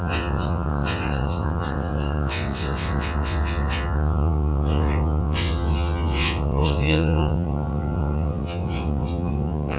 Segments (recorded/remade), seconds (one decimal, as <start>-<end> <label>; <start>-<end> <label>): 0.0-9.8 remade

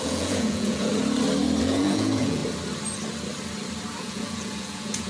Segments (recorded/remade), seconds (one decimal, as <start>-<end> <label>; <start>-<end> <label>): 0.0-0.9 remade; 0.9-1.6 recorded; 1.6-2.4 remade; 2.4-4.0 recorded; 4.0-5.1 remade

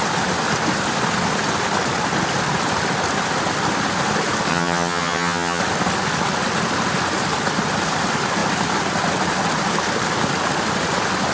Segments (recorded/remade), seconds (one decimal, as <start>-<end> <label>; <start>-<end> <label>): 0.0-4.5 recorded; 4.5-5.6 remade; 5.6-11.3 recorded

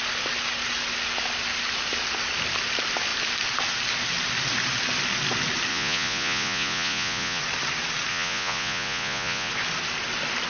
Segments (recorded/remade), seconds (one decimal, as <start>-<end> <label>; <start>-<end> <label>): 0.0-5.7 recorded; 5.7-7.4 remade; 7.4-8.1 recorded; 8.1-9.5 remade; 9.5-10.5 recorded

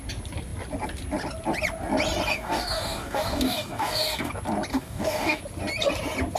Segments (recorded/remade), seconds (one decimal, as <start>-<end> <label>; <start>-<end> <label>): 0.0-2.3 recorded; 2.3-4.3 remade; 4.3-4.7 recorded; 4.7-5.4 remade; 5.4-6.4 recorded

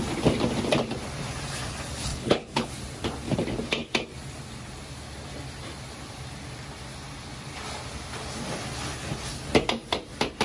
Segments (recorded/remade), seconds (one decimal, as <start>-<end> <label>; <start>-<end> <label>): 0.0-2.1 recorded; 2.1-2.7 remade; 2.7-10.4 recorded

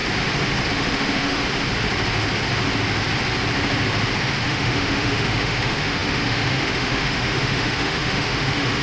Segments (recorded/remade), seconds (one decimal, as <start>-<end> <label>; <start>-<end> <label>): 0.0-0.7 recorded; 0.7-1.4 remade; 1.4-4.2 recorded; 4.2-8.8 remade

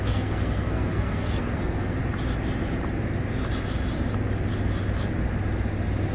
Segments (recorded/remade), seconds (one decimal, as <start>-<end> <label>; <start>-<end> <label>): 0.0-2.0 remade; 2.0-6.1 recorded